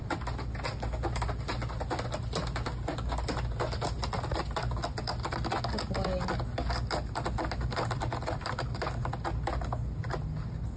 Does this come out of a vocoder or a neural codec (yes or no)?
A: no